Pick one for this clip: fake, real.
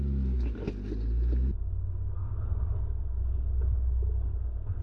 real